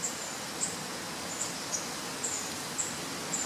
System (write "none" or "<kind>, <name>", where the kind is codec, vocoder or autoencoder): none